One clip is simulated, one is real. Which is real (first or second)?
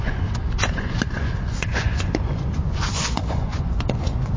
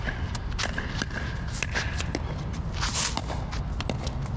second